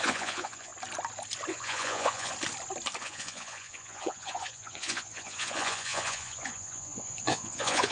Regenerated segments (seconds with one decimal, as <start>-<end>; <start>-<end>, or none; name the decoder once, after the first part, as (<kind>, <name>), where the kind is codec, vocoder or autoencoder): 0.0-0.7 (vocoder, Vocos); 1.5-2.3; 3.0-7.9